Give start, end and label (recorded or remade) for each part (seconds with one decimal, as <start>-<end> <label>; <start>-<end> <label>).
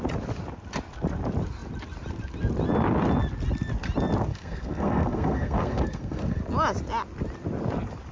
0.0-4.3 recorded; 4.3-6.4 remade; 6.4-8.1 recorded